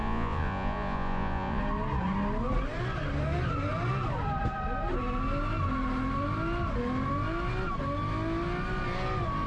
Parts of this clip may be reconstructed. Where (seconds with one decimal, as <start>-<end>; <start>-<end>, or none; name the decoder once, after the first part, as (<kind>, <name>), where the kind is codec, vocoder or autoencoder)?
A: 0.0-1.6 (vocoder, Vocos)